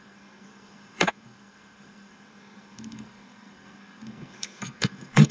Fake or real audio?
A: fake